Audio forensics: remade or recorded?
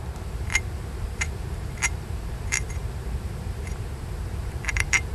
remade